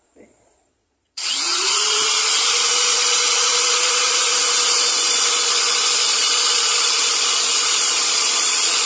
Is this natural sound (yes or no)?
no